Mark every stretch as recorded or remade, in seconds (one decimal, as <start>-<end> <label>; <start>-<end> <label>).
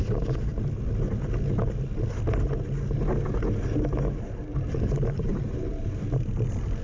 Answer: 0.0-0.5 remade; 0.5-4.6 recorded; 4.6-6.8 remade